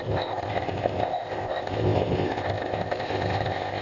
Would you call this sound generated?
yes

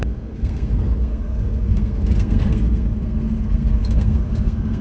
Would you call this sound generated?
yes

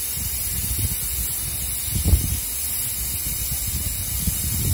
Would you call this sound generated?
no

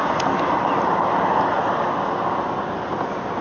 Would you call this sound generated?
no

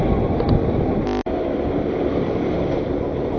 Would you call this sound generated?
no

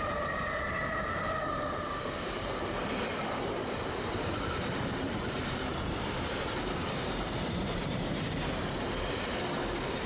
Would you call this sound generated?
yes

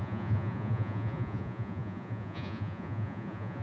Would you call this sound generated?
yes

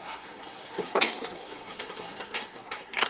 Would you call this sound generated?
yes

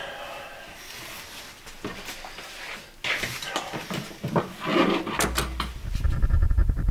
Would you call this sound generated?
no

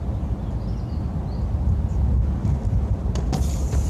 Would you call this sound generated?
no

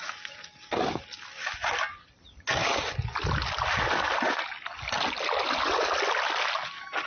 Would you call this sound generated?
no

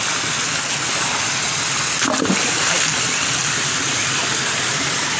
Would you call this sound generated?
no